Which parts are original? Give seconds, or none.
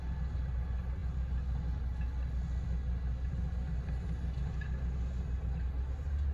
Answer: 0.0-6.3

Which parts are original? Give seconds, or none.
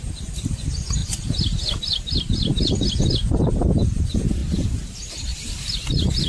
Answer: 4.4-4.9